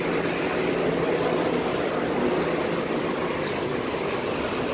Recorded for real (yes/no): yes